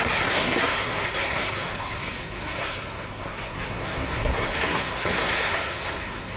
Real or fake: fake